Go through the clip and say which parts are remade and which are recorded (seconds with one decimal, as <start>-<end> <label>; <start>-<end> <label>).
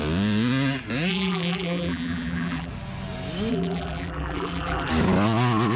0.0-1.1 recorded; 1.1-2.7 remade; 2.7-3.5 recorded; 3.5-4.9 remade; 4.9-5.8 recorded